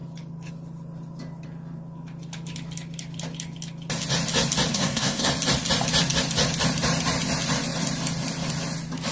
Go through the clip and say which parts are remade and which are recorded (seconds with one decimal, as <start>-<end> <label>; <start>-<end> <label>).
0.0-4.7 recorded; 4.7-5.3 remade; 5.3-9.1 recorded